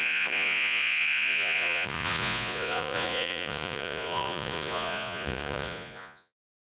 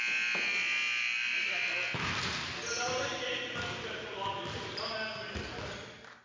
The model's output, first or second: first